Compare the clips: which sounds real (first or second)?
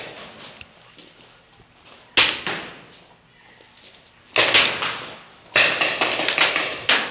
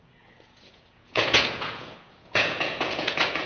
first